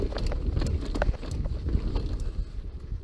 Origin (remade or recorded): recorded